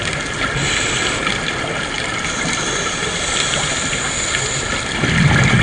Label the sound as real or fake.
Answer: real